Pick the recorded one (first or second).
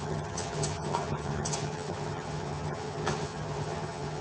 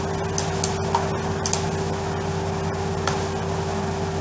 second